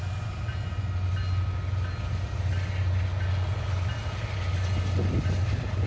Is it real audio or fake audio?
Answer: real